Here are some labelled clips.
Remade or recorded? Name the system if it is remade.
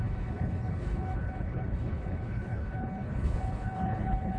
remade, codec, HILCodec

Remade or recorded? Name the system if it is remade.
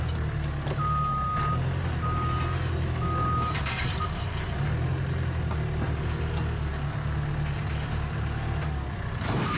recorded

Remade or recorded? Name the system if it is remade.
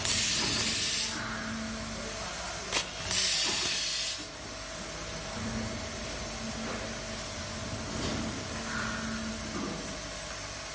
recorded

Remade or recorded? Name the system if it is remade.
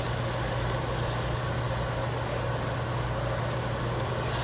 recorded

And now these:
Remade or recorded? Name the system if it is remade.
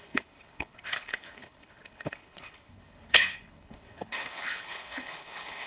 remade, codec, HILCodec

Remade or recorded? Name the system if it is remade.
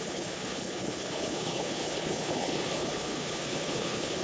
remade, codec, HILCodec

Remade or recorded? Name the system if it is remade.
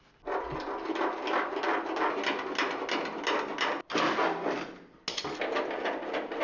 recorded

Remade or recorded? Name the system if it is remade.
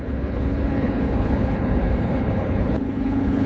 remade, codec, HILCodec